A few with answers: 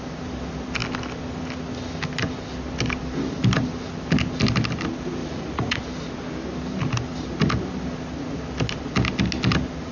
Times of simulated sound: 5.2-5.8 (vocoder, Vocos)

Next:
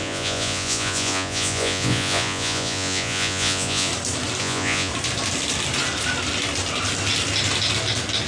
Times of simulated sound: 0.0-3.9 (vocoder, Vocos); 4.4-4.9

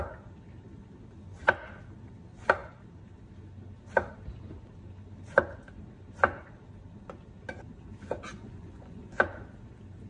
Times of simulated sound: 8.3-9.2 (vocoder, Vocos)

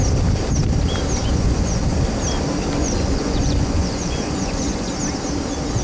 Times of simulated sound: 1.2-1.8 (vocoder, Vocos); 2.8-4.9

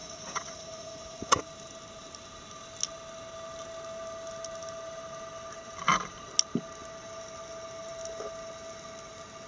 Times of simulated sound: 0.0-1.4 (vocoder, Vocos)

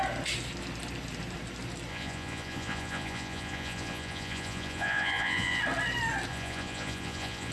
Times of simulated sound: 1.9-5.6 (vocoder, Vocos); 6.3-7.5

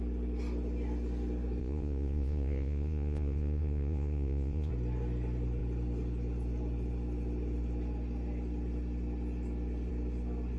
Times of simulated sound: 1.6-4.7 (vocoder, Vocos)

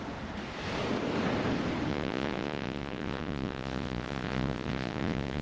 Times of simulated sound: 1.9-5.4 (vocoder, Vocos)